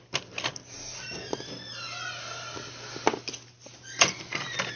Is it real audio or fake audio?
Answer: real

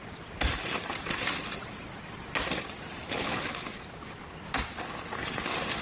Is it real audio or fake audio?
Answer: real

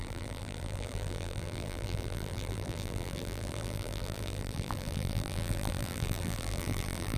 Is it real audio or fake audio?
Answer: fake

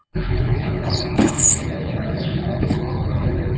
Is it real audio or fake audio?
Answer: fake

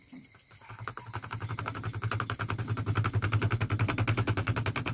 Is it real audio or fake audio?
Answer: real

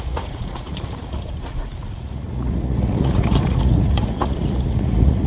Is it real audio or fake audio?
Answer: fake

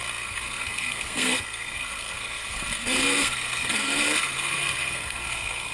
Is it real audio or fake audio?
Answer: fake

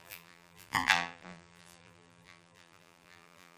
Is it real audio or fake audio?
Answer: fake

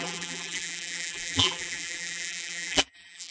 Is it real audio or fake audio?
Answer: fake